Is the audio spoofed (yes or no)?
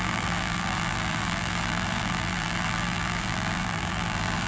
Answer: yes